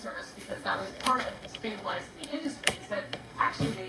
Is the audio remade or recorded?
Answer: remade